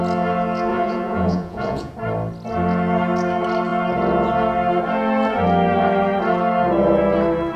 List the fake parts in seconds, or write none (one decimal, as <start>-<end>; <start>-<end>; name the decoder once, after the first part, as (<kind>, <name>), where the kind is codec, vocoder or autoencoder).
0.7-1.9 (vocoder, Vocos)

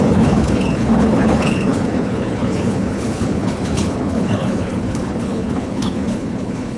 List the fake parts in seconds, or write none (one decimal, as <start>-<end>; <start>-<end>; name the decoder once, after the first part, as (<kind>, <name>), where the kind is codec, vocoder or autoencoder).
0.0-6.8 (codec, HILCodec)

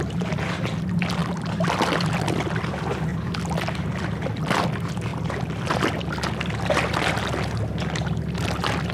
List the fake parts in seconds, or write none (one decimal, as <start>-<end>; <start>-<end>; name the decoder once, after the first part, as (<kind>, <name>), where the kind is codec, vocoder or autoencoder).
none

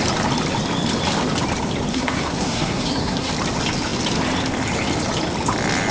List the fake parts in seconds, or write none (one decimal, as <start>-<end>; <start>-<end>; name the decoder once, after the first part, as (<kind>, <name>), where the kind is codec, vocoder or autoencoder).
1.9-3.3 (codec, SNAC)

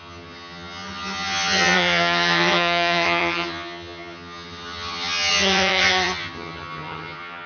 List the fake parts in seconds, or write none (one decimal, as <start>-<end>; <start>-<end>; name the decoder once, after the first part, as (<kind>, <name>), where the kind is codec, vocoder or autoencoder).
0.0-7.5 (vocoder, HiFi-GAN)